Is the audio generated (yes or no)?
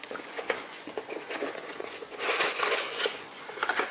yes